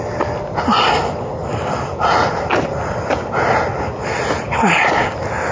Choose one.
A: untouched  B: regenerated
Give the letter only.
A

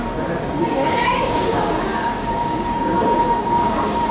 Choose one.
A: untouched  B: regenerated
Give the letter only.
B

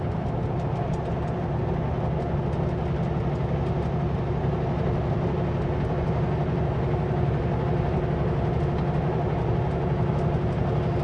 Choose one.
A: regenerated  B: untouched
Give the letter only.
B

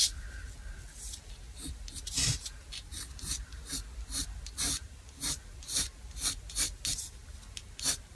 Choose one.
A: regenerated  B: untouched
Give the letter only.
B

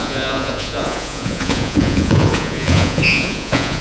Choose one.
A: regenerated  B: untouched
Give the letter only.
A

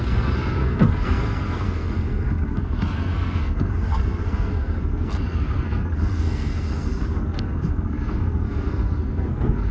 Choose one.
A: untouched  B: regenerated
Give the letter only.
B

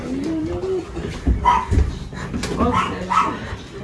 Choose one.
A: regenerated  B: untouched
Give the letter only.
B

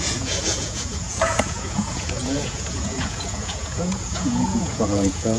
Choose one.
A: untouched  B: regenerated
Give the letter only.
B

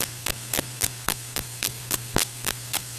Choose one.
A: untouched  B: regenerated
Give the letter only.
B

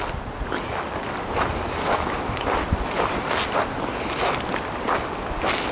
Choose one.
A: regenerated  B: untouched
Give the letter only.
B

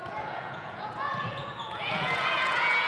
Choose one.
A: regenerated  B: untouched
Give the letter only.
A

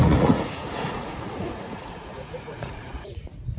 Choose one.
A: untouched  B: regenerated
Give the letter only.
B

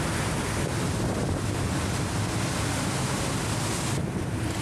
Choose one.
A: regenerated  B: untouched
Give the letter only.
B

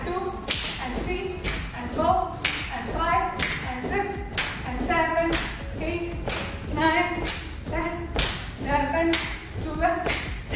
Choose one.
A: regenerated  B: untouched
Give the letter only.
B